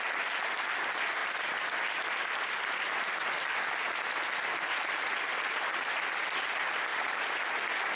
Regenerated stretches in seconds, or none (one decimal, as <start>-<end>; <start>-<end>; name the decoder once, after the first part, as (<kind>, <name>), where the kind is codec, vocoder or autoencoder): 1.2-2.9 (vocoder, BigVGAN v2); 6.9-7.5